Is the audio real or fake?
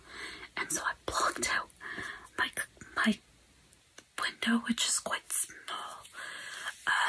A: real